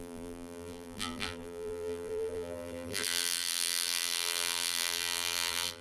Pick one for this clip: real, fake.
fake